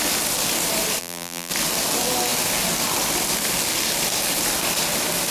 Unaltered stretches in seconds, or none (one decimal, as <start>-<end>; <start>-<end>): 0.0-1.0; 1.5-5.3